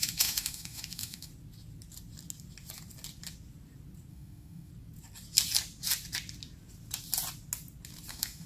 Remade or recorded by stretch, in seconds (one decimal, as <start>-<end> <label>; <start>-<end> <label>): 0.0-1.3 remade; 1.3-4.1 recorded; 4.1-4.7 remade; 4.7-8.1 recorded; 8.1-8.5 remade